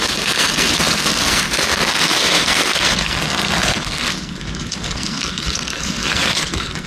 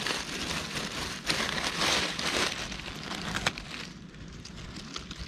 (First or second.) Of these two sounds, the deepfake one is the first